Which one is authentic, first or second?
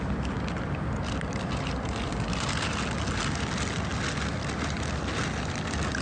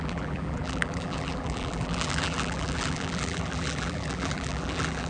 first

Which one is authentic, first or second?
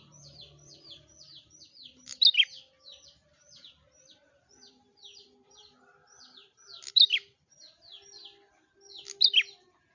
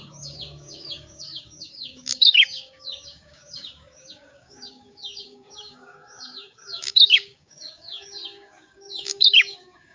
first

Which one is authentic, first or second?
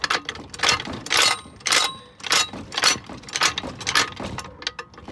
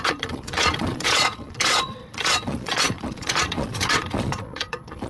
first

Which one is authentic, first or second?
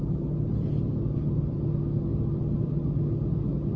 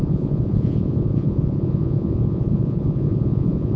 first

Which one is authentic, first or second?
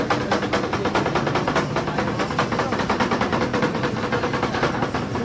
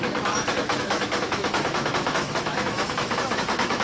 first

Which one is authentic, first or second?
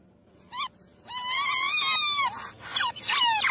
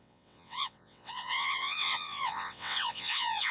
first